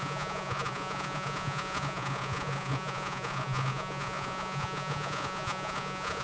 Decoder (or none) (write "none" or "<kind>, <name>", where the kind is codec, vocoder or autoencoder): vocoder, Vocos